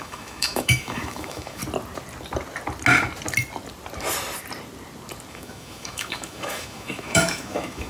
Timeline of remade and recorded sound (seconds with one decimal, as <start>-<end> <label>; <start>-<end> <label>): 0.0-1.6 remade; 1.6-5.3 recorded; 5.3-7.9 remade